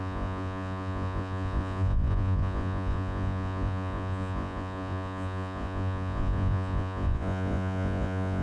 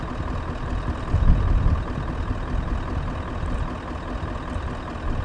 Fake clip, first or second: first